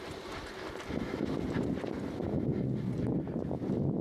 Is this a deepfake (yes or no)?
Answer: no